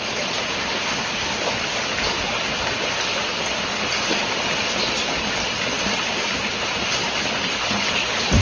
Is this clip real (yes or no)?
yes